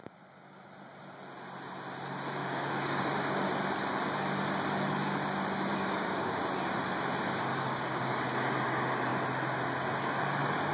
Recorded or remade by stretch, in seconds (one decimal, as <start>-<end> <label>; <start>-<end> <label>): 0.0-2.4 recorded; 2.4-3.1 remade; 3.1-5.7 recorded; 5.7-6.4 remade; 6.4-7.5 recorded; 7.5-8.2 remade; 8.2-10.7 recorded

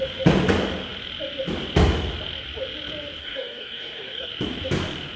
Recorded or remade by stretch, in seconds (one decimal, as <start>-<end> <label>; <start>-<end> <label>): 0.0-3.2 recorded; 3.2-4.3 remade; 4.3-5.2 recorded

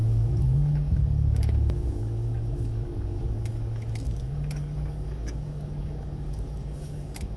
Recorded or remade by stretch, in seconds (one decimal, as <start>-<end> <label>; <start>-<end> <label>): 0.0-7.4 remade